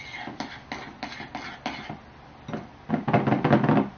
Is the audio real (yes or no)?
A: yes